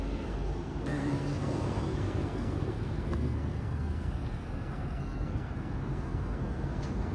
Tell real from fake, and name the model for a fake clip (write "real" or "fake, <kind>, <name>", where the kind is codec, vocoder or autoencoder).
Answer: fake, codec, SNAC